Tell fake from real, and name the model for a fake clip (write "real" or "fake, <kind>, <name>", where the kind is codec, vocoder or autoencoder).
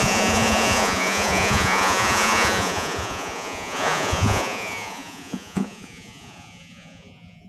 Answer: fake, vocoder, Vocos